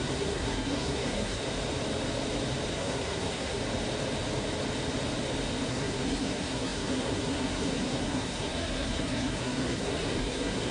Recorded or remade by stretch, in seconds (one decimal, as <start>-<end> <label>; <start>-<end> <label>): 0.0-1.4 remade; 1.4-2.7 recorded; 2.7-3.6 remade; 3.6-5.7 recorded; 5.7-10.7 remade